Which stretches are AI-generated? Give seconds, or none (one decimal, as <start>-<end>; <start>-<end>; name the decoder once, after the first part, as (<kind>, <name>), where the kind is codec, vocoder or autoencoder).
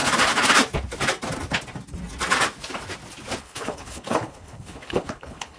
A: 3.4-5.6 (codec, HILCodec)